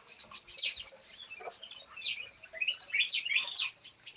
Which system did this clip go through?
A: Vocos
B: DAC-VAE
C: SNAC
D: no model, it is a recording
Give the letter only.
D